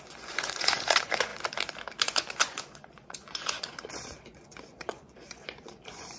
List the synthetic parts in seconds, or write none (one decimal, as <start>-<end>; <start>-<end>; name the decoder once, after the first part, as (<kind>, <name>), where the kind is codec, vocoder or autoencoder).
0.0-1.3 (vocoder, Vocos); 2.0-6.2